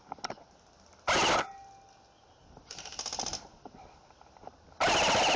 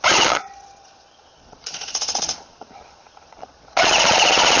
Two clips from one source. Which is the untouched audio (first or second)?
first